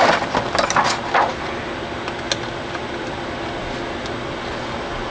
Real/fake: real